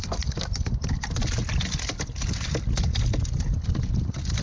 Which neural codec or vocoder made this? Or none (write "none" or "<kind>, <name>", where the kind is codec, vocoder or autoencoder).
none